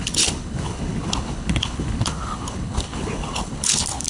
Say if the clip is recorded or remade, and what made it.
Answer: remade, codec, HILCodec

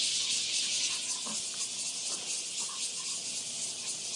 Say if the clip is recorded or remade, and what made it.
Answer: recorded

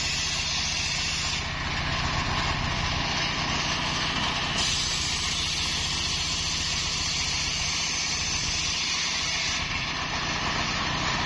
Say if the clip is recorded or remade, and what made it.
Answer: recorded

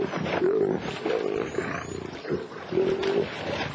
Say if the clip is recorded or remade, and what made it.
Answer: recorded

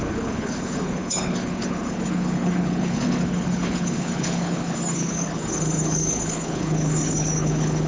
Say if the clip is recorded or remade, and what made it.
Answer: remade, codec, HILCodec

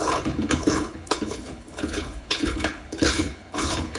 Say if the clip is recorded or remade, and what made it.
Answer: remade, codec, HILCodec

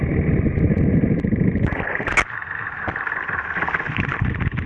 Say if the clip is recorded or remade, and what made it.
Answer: recorded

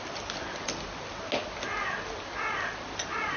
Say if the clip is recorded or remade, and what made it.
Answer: recorded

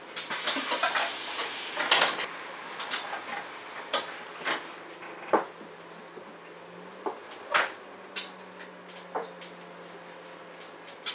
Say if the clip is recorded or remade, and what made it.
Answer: recorded